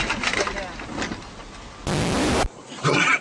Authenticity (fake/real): real